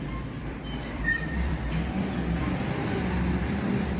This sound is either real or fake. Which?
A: fake